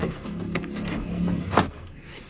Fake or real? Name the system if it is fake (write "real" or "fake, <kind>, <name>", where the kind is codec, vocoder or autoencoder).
fake, codec, SNAC